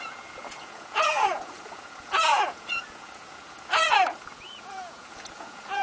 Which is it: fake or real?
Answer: fake